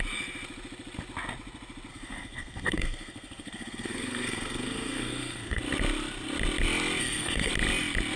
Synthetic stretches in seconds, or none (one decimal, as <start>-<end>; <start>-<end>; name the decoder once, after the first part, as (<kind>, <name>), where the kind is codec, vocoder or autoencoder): 1.9-5.6 (codec, SNAC); 7.0-7.5